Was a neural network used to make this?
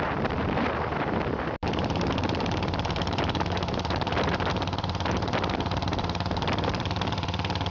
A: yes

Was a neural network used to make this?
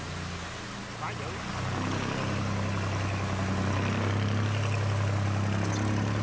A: no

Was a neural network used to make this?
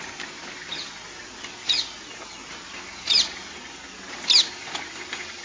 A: no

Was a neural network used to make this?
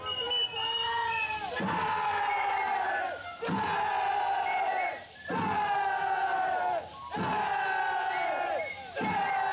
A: no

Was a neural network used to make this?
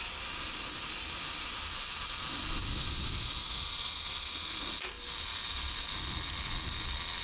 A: no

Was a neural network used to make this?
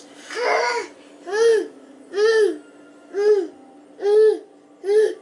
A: no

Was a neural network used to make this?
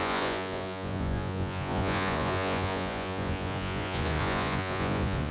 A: yes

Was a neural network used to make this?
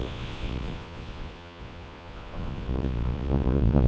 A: yes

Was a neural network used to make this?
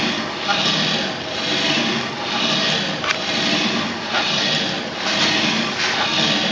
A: no